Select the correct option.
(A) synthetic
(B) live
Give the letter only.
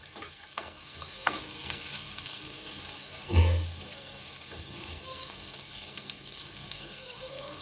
A